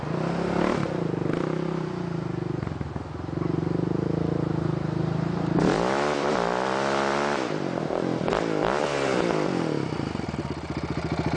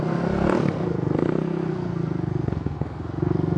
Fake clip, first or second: second